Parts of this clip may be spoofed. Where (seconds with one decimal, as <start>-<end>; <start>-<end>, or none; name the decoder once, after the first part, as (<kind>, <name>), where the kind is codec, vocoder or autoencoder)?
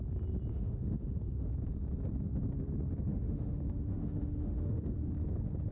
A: 0.5-1.5 (autoencoder, DAC-VAE); 3.1-5.1